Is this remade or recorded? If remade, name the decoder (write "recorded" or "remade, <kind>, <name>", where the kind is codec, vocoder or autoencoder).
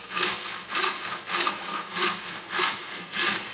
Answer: remade, codec, SNAC